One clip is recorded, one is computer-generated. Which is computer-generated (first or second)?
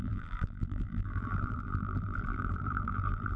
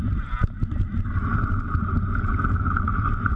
first